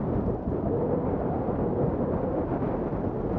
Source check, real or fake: real